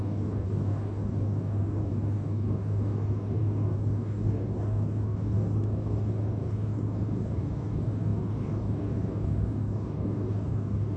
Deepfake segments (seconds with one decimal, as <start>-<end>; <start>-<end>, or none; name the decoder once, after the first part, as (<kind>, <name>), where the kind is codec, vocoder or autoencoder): 0.0-11.0 (codec, DAC)